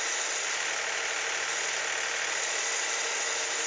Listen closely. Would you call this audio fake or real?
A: real